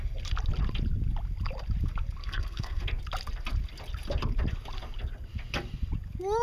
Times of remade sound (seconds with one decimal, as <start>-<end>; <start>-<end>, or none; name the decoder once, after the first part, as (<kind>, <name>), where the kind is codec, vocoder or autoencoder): 2.2-2.8 (codec, SNAC)